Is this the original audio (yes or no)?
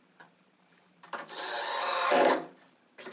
no